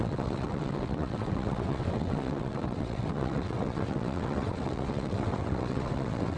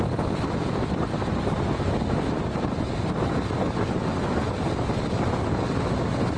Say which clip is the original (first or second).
second